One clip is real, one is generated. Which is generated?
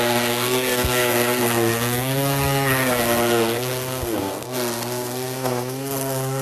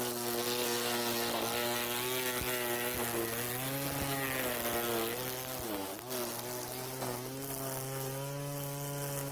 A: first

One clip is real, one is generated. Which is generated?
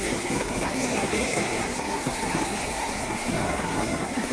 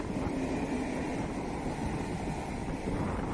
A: first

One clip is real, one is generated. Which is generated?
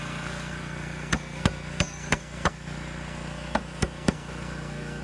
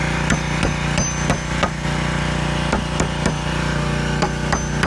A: first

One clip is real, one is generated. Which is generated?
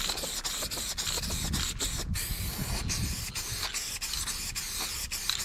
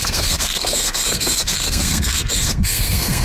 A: second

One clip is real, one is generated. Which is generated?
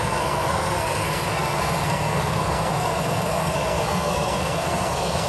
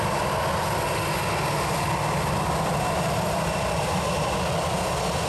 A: first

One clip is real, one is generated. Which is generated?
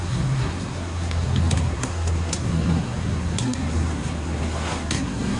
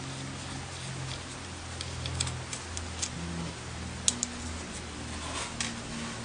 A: first